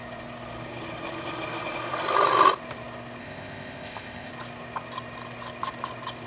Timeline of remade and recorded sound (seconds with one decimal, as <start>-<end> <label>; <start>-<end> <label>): 0.0-3.2 recorded; 3.2-4.3 remade; 4.3-6.3 recorded